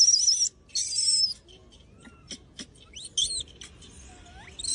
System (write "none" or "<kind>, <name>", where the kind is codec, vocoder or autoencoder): none